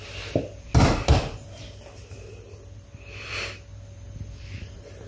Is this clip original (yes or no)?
yes